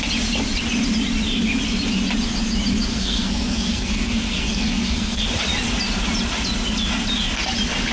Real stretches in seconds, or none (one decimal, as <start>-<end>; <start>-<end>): 0.0-2.9; 5.2-7.9